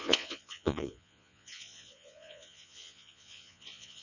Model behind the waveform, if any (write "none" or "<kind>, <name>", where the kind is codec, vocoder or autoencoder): vocoder, Vocos